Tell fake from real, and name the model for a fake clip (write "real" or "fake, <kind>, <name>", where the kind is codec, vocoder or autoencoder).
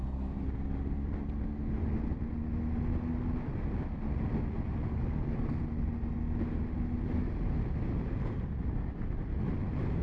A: real